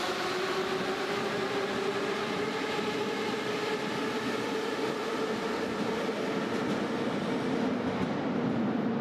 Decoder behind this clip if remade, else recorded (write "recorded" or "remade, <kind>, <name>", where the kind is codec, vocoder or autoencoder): recorded